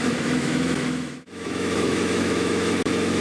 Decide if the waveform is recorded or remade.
remade